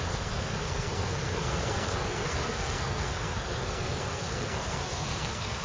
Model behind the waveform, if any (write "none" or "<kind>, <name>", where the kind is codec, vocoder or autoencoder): codec, SNAC